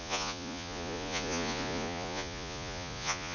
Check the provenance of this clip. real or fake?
fake